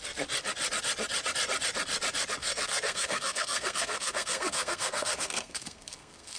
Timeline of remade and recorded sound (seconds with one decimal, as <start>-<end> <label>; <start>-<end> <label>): 0.0-2.4 recorded; 2.4-6.4 remade